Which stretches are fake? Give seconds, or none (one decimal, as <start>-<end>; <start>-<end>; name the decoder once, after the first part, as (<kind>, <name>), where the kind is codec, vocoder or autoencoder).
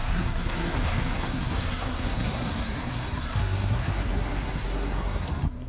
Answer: 0.0-5.7 (codec, SNAC)